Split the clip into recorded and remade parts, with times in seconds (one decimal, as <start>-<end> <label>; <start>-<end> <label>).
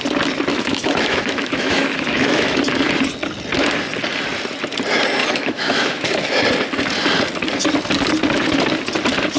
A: 0.0-0.5 recorded; 0.5-2.6 remade; 2.6-5.2 recorded; 5.2-6.2 remade; 6.2-9.4 recorded